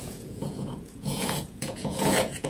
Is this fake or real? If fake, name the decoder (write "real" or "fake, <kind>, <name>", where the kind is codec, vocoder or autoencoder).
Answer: fake, vocoder, Vocos